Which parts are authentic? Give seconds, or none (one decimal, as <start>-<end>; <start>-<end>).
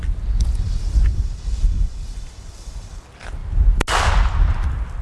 0.0-5.0